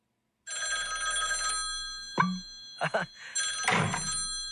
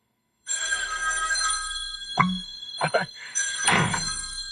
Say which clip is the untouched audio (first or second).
first